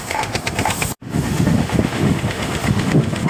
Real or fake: fake